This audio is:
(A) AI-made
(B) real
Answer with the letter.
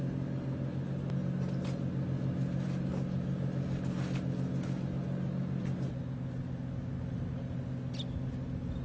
B